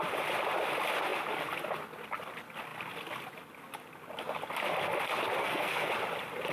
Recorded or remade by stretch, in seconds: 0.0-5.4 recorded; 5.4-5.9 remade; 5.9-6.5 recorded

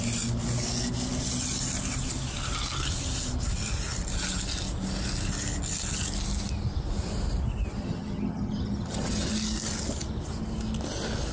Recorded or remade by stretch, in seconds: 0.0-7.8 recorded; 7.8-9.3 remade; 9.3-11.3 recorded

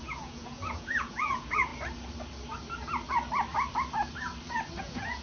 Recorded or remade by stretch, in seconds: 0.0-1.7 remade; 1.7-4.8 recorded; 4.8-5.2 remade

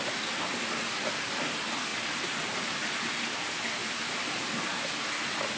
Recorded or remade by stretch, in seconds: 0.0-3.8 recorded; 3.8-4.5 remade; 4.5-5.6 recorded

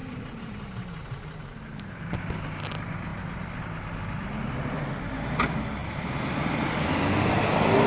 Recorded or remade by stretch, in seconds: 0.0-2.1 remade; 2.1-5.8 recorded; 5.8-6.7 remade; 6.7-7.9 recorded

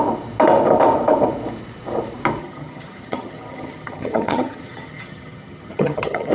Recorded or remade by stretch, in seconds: 0.0-2.4 recorded; 2.4-6.3 remade

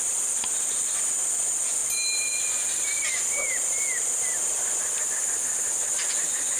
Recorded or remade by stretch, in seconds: 0.0-1.8 recorded; 1.8-5.7 remade; 5.7-6.6 recorded

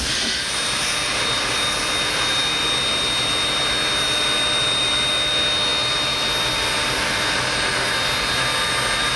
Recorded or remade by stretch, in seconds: 0.0-9.2 recorded